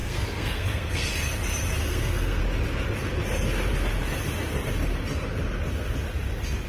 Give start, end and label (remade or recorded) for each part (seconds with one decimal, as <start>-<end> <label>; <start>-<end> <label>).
0.0-1.1 remade; 1.1-1.8 recorded; 1.8-2.4 remade; 2.4-6.7 recorded